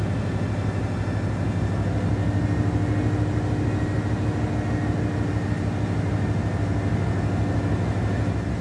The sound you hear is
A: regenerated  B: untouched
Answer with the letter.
B